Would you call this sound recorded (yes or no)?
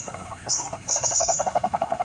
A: no